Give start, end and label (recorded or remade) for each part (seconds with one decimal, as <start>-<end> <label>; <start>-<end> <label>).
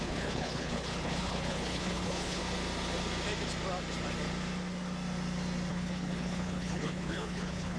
0.0-2.4 remade; 2.4-5.7 recorded; 5.7-7.8 remade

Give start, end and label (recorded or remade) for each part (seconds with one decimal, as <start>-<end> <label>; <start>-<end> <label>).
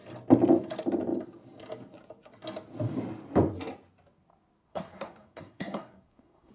0.0-4.7 recorded; 4.7-6.5 remade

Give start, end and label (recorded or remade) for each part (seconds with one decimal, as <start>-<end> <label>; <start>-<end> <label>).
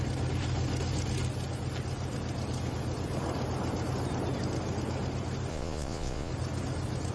0.0-5.5 recorded; 5.5-6.3 remade; 6.3-7.1 recorded